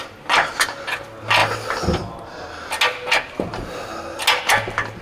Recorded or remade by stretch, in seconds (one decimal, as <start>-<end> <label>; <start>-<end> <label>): 0.0-5.0 recorded